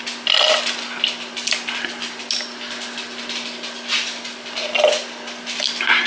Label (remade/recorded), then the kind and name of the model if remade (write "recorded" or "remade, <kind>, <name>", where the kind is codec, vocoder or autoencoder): recorded